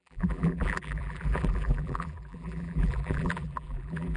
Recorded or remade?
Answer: remade